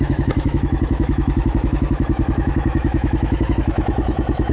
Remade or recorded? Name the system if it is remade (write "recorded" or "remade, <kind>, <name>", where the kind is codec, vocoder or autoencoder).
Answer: remade, autoencoder, DAC-VAE